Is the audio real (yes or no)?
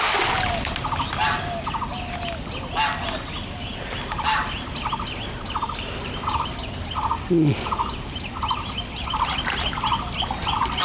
yes